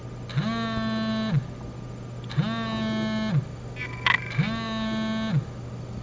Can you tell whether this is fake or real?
real